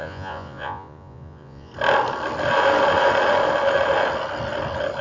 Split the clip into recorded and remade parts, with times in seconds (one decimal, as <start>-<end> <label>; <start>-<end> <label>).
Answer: 0.0-1.7 remade; 1.7-5.0 recorded